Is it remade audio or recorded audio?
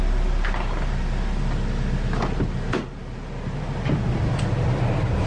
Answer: recorded